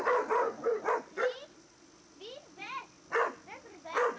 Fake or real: real